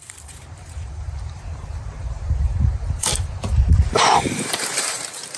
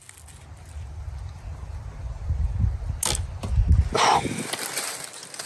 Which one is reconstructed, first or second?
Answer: first